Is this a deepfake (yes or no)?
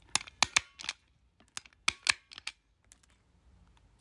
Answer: no